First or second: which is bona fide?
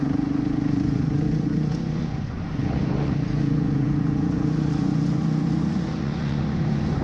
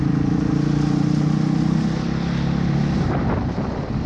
second